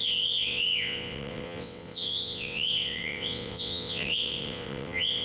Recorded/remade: remade